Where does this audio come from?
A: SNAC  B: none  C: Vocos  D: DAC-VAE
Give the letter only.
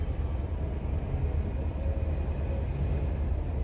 B